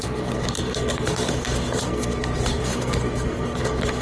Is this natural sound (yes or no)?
no